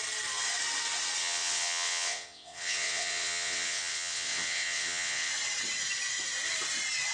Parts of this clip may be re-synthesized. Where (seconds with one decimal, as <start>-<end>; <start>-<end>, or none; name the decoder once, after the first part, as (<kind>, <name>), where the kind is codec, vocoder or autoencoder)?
1.2-5.3 (vocoder, WaveNeXt)